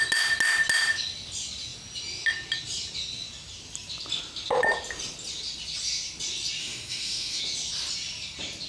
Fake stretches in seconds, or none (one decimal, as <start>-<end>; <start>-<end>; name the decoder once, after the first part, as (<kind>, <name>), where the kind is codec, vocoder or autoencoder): 6.6-7.4 (autoencoder, DAC-VAE)